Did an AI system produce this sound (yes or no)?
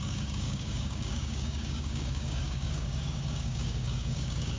yes